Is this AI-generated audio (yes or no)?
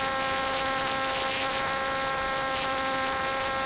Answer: no